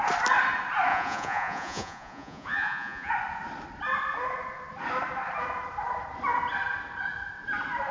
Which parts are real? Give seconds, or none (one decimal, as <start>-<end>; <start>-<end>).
0.0-0.9; 3.1-7.9